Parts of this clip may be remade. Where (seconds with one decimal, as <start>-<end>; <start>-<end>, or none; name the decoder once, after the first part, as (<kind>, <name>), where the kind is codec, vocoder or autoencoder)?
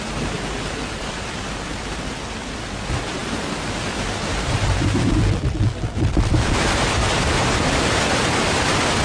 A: 0.0-3.2 (vocoder, BigVGAN v2); 3.8-9.0